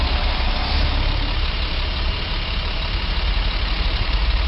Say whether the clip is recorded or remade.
remade